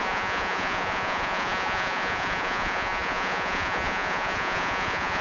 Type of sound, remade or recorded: remade